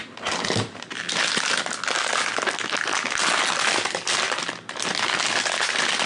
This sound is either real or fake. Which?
real